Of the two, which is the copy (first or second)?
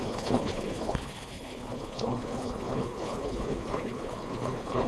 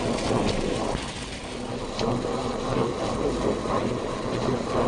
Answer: first